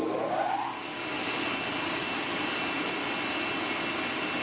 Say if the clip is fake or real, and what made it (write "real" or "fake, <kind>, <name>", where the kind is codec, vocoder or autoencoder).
real